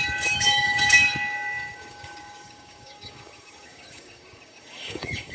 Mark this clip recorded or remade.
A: remade